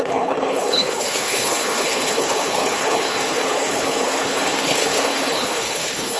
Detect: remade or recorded remade